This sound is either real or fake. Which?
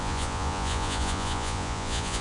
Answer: fake